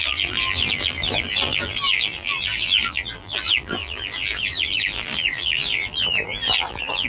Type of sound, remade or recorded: remade